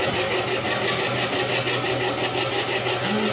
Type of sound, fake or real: real